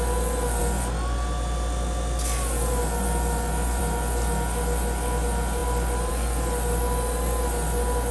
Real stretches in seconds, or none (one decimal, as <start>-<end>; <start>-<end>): 0.0-8.1

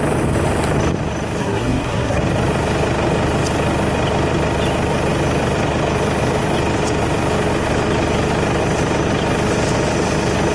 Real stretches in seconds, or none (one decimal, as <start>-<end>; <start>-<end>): 0.0-1.4; 2.2-10.5

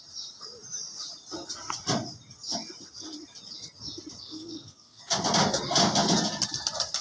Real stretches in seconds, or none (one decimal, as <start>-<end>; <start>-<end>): 0.0-4.2; 5.0-7.0

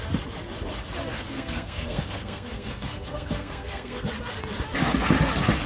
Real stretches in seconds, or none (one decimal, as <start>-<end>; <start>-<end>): 0.0-1.1; 4.1-5.7